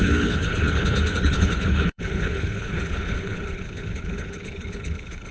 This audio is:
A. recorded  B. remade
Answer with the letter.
B